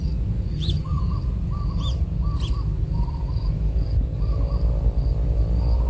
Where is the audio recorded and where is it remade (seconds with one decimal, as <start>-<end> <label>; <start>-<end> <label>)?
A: 0.0-0.5 recorded; 0.5-1.0 remade; 1.0-5.9 recorded